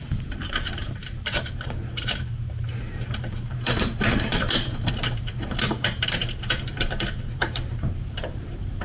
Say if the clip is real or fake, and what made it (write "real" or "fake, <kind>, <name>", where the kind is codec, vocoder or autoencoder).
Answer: fake, vocoder, BigVGAN v2